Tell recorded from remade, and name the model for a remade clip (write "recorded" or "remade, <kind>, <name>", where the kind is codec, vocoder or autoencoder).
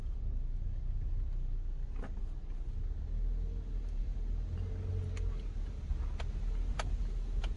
recorded